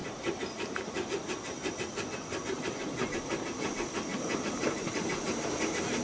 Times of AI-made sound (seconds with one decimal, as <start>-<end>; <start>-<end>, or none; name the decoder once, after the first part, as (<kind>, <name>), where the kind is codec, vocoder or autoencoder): 0.0-3.6 (vocoder, BigVGAN v2); 4.1-4.8